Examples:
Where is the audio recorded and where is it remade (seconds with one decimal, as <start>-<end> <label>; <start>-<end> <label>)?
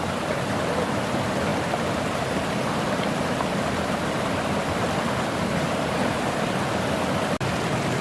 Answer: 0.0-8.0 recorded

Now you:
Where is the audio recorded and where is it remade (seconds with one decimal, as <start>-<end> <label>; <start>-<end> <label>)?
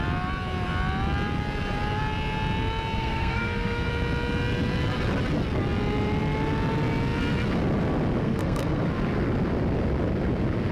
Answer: 0.0-3.0 recorded; 3.0-3.9 remade; 3.9-8.2 recorded; 8.2-8.8 remade; 8.8-10.7 recorded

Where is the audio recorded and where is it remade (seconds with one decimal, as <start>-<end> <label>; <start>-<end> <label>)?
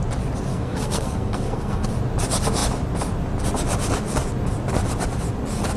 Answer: 0.0-0.5 recorded; 0.5-1.9 remade; 1.9-5.8 recorded